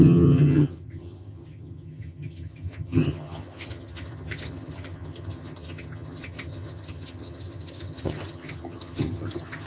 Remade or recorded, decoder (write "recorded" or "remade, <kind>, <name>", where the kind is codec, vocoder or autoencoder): remade, vocoder, HiFi-GAN